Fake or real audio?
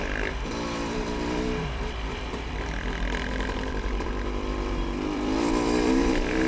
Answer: fake